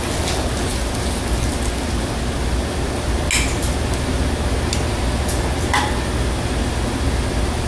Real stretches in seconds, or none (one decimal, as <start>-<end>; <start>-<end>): 0.0-7.7